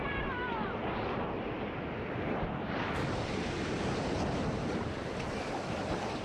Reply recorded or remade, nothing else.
recorded